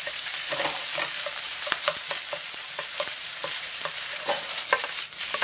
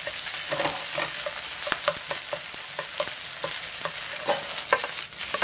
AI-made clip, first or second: first